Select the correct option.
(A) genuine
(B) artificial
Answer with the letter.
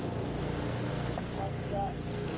B